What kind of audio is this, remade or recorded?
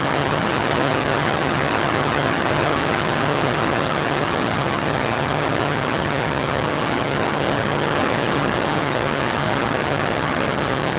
remade